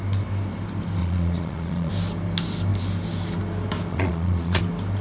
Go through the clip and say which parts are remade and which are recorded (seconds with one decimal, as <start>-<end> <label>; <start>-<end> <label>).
0.0-1.0 recorded; 1.0-1.9 remade; 1.9-3.9 recorded; 3.9-4.6 remade; 4.6-5.0 recorded